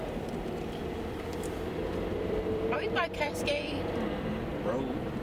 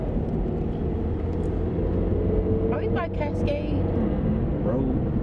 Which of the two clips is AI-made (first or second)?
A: first